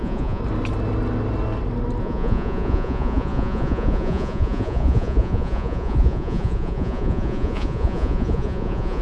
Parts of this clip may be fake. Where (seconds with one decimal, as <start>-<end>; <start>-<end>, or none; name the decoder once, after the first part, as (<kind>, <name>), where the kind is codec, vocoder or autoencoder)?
0.0-0.4 (vocoder, Vocos); 2.0-9.0

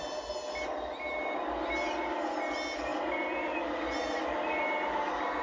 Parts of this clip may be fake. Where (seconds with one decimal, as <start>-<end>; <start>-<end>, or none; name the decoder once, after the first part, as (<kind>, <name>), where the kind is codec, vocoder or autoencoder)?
2.9-4.2 (vocoder, BigVGAN v2)